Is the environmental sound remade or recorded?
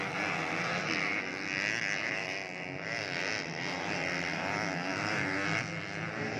recorded